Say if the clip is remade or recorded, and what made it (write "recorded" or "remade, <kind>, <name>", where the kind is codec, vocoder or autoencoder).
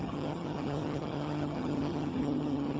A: remade, vocoder, HiFi-GAN